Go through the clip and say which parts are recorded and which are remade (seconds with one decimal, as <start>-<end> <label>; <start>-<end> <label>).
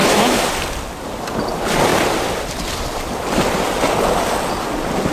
0.0-0.5 remade; 0.5-5.1 recorded